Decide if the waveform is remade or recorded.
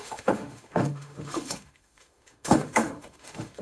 remade